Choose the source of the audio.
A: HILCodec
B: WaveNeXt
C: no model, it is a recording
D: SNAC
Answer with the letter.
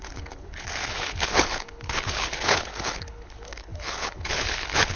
A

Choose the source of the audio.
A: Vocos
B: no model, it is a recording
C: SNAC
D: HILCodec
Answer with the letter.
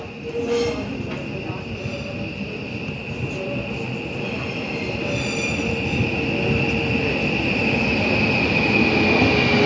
B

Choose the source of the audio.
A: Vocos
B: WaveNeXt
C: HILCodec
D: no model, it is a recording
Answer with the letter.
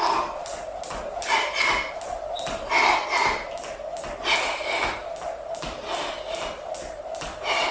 D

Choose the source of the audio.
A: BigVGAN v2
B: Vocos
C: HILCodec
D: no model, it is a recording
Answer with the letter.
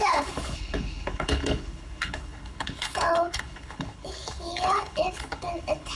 C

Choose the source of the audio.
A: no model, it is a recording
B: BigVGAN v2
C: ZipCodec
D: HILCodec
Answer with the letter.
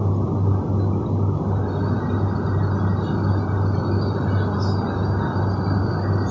A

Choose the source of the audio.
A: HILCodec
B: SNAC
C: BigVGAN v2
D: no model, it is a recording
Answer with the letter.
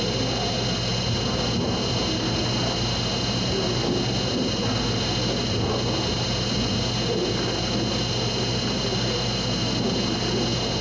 D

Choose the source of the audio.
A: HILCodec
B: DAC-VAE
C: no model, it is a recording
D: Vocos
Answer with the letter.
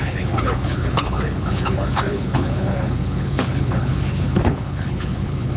A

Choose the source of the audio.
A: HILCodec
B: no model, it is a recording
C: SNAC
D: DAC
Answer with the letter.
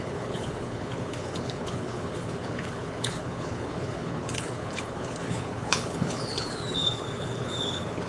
A